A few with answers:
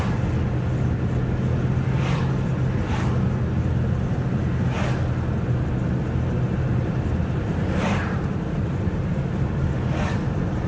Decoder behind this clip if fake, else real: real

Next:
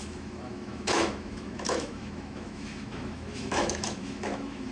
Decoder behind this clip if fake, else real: fake, autoencoder, DAC-VAE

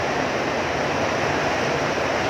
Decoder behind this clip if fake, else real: fake, vocoder, BigVGAN v2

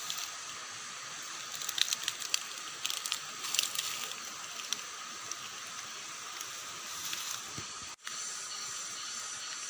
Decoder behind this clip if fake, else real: real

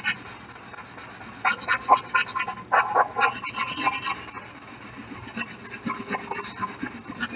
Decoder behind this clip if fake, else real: real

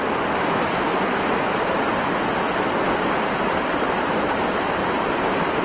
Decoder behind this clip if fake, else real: real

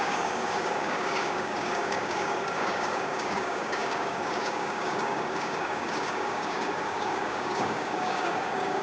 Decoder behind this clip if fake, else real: fake, codec, DAC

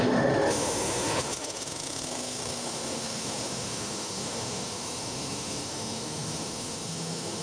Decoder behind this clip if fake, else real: fake, autoencoder, DAC-VAE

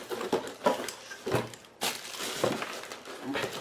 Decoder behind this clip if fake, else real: real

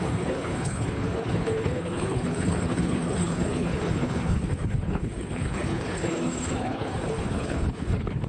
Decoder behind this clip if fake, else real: fake, codec, HILCodec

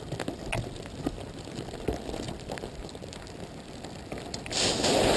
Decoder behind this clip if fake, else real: real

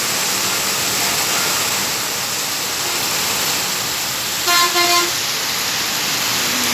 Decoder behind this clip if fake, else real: real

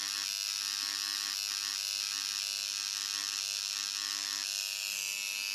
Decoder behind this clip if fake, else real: real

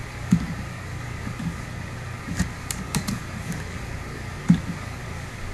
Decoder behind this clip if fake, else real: fake, codec, DAC